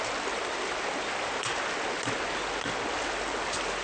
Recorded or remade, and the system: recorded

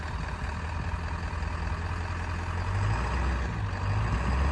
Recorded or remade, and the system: recorded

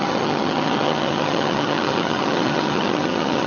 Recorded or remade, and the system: remade, vocoder, HiFi-GAN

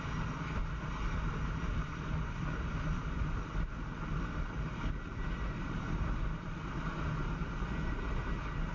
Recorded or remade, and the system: recorded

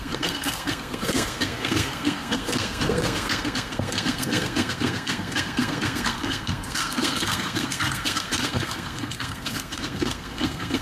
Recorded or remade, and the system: remade, codec, SNAC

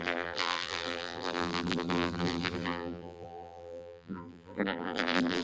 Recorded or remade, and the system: remade, vocoder, BigVGAN v2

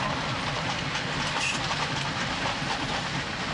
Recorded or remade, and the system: recorded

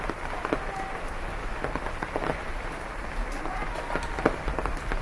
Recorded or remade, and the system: recorded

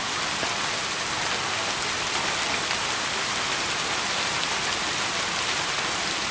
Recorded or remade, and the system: recorded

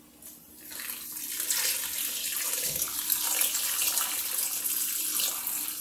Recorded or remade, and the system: recorded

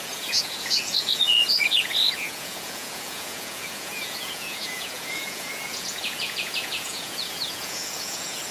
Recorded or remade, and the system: remade, vocoder, Vocos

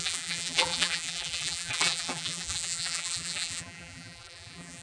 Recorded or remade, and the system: remade, vocoder, BigVGAN v2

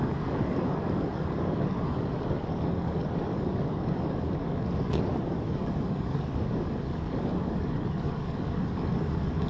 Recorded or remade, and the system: remade, codec, DAC